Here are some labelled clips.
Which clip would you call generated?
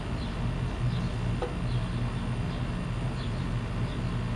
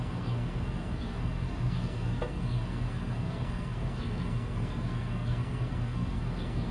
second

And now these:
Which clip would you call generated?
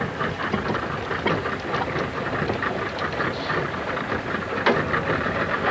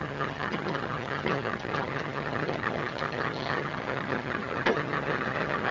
second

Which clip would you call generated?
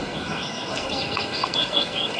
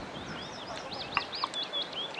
first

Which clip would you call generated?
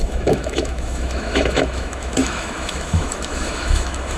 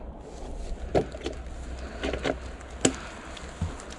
first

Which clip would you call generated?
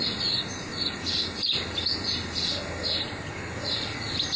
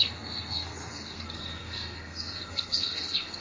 second